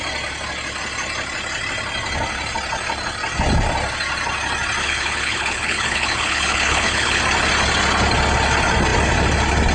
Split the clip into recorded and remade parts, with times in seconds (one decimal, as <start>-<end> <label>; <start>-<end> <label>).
0.0-4.8 recorded; 4.8-7.2 remade; 7.2-9.7 recorded